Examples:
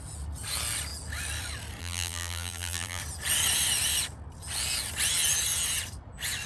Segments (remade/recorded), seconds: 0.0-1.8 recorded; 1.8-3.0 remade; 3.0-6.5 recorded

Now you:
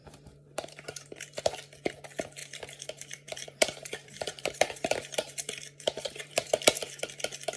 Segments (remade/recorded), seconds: 0.0-1.4 remade; 1.4-2.4 recorded; 2.4-7.0 remade; 7.0-7.6 recorded